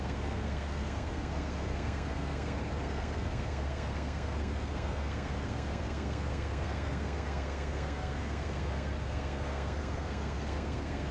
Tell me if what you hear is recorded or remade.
remade